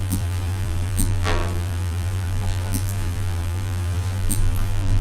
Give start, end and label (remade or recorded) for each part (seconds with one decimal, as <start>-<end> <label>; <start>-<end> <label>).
0.0-5.0 remade

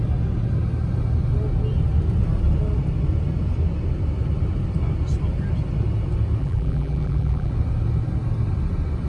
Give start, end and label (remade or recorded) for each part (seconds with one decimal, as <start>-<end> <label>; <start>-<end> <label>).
0.0-6.4 recorded; 6.4-7.5 remade; 7.5-9.1 recorded

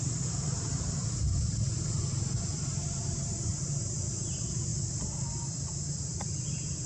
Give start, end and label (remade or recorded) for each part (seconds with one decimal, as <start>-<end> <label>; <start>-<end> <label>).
0.0-4.7 remade; 4.7-5.9 recorded; 5.9-6.9 remade

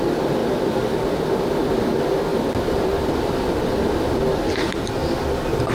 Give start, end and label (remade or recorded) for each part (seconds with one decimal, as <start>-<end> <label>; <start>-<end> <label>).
0.0-0.4 recorded; 0.4-0.9 remade; 0.9-2.3 recorded; 2.3-4.1 remade; 4.1-5.7 recorded

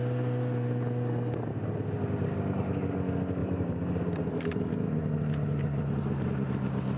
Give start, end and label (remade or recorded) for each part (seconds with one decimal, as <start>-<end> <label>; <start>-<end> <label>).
0.0-3.4 recorded; 3.4-4.6 remade; 4.6-7.0 recorded

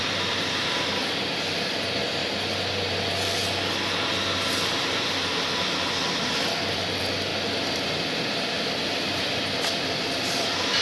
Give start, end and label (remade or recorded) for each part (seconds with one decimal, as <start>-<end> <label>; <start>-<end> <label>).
0.0-2.2 remade; 2.2-6.0 recorded; 6.0-7.3 remade; 7.3-8.2 recorded; 8.2-10.8 remade

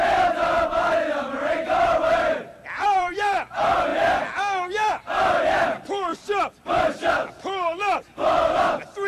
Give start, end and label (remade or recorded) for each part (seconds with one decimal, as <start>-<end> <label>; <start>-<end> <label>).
0.0-3.9 remade; 3.9-4.9 recorded; 4.9-9.1 remade